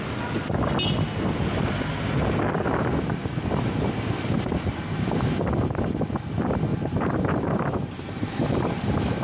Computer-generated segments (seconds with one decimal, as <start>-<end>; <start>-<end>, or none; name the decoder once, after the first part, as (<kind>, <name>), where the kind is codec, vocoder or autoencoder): 6.7-9.2 (vocoder, BigVGAN v2)